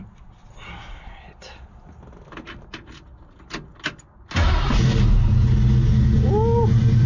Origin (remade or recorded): recorded